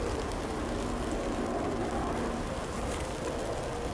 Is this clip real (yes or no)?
yes